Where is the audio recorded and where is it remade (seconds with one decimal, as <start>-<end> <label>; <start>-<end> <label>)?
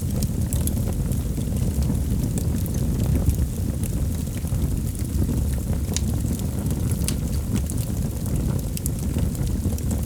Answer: 0.0-10.1 recorded